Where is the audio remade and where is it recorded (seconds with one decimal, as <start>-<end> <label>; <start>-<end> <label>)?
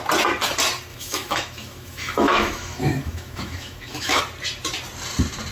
0.0-0.9 recorded; 0.9-4.2 remade; 4.2-5.5 recorded